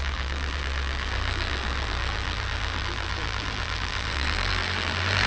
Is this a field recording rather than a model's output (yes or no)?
no